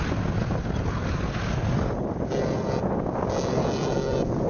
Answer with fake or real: real